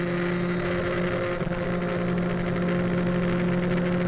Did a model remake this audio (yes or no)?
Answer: no